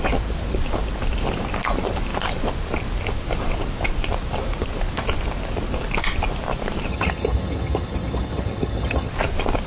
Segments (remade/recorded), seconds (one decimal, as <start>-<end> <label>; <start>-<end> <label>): 0.0-6.9 recorded; 6.9-9.1 remade; 9.1-9.7 recorded